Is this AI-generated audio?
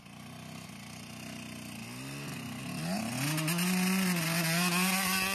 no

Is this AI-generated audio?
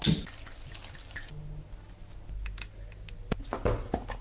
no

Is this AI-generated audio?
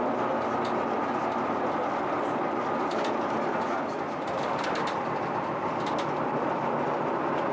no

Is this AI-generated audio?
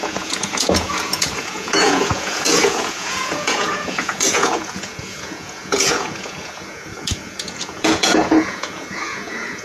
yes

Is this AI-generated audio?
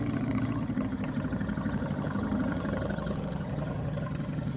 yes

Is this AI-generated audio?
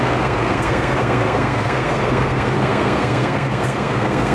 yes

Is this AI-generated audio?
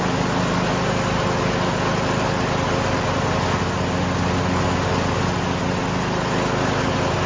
no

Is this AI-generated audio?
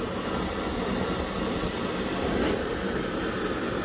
no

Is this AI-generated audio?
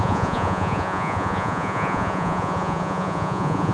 yes